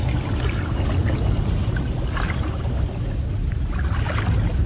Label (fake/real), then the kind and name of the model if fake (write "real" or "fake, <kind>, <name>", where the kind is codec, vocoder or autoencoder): real